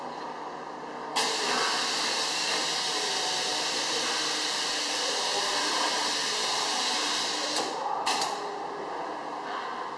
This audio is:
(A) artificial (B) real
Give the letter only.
A